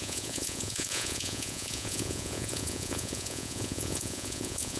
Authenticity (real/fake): fake